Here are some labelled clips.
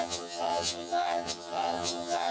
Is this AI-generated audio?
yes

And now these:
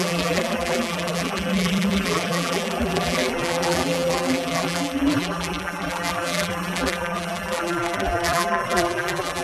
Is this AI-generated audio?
yes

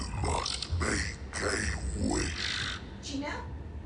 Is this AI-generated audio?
no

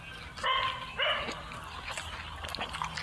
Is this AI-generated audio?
no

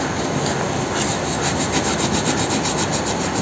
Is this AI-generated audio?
no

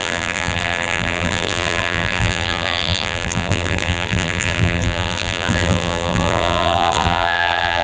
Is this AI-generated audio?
yes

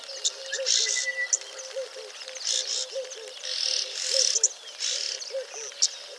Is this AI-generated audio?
no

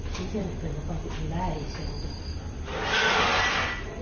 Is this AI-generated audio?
no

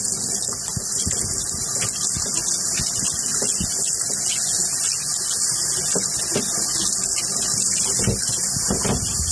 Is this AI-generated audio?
no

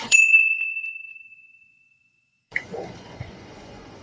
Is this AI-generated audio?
yes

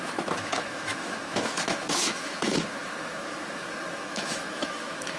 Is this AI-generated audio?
yes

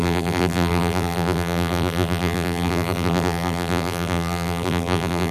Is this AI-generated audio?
yes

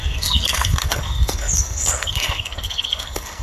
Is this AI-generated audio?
yes